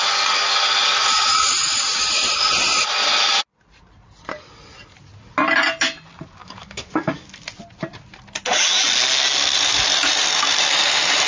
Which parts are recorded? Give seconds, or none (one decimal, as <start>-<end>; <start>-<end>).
0.0-6.4; 7.3-11.3